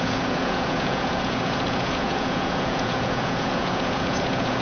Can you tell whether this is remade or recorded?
remade